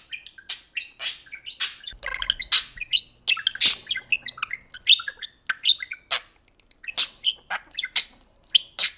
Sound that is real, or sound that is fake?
real